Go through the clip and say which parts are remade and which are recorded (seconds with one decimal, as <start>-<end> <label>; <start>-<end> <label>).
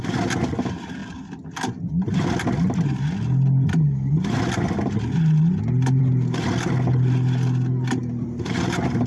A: 0.0-9.1 recorded